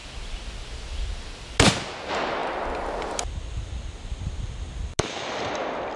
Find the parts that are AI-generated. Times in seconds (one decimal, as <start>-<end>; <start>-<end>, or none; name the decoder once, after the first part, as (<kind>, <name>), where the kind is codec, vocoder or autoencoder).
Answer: none